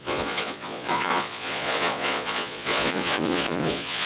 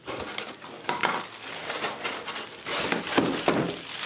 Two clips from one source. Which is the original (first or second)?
second